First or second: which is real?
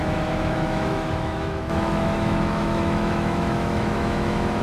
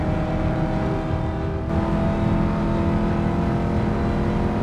second